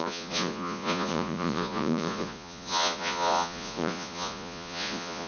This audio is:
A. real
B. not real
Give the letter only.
B